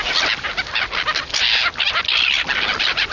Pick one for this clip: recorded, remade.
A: recorded